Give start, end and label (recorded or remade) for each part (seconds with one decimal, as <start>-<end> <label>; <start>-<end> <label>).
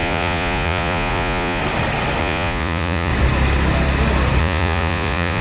0.0-1.6 remade; 1.6-2.2 recorded; 2.2-3.1 remade; 3.1-4.4 recorded; 4.4-5.4 remade